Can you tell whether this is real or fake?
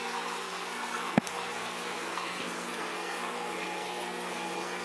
fake